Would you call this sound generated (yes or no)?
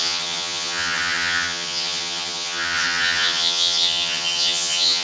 yes